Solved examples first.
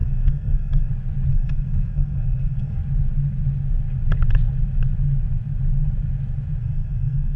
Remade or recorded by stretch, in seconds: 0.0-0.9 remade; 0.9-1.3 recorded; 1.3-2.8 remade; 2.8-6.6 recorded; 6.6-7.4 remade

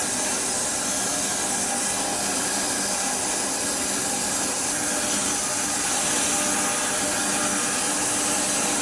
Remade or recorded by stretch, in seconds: 0.0-8.8 recorded

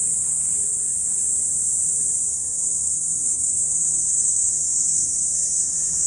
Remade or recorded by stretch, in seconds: 0.0-2.3 recorded; 2.3-6.1 remade

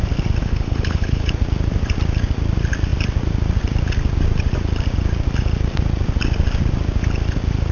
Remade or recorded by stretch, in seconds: 0.0-0.4 recorded; 0.4-1.3 remade; 1.3-7.7 recorded

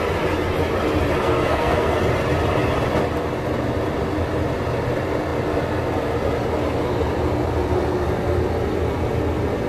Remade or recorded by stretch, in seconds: 0.0-1.2 recorded; 1.2-2.0 remade; 2.0-9.7 recorded

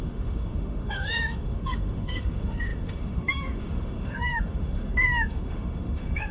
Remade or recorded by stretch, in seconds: 0.0-6.3 remade

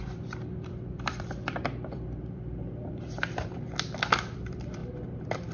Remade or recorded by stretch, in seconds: 0.0-4.8 remade; 4.8-5.5 recorded

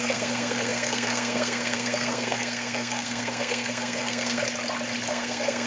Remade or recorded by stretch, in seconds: 0.0-4.4 remade; 4.4-5.1 recorded; 5.1-5.7 remade